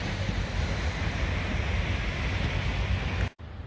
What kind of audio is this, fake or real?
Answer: real